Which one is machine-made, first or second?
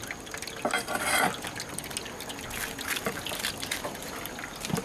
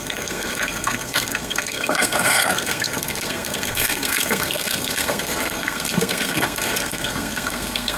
second